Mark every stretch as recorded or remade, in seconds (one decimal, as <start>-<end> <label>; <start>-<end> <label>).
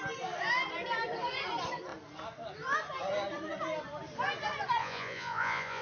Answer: 0.0-4.8 recorded; 4.8-5.8 remade